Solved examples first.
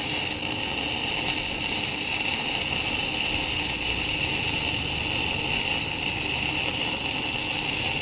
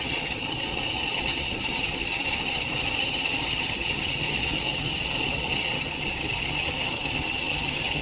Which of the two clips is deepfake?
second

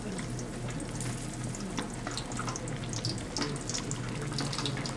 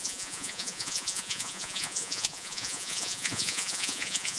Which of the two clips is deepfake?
second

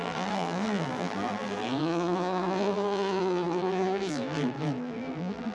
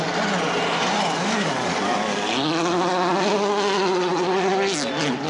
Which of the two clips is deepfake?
first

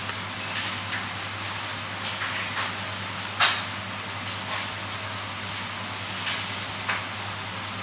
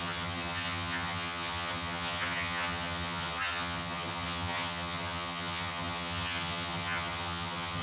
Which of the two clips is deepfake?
second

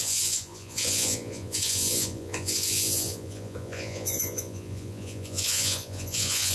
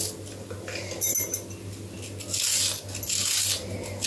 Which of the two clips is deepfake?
first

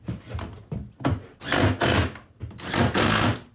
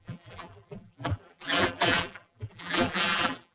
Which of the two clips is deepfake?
second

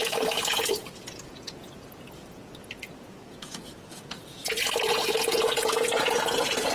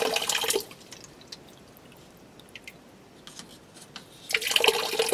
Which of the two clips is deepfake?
first